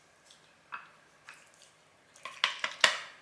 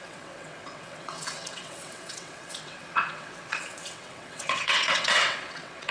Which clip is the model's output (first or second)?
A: second